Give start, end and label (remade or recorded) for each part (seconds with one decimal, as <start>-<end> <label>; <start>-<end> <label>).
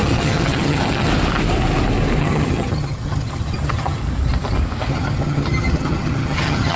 0.0-1.1 remade; 1.1-2.2 recorded; 2.2-4.0 remade; 4.0-4.9 recorded; 4.9-6.8 remade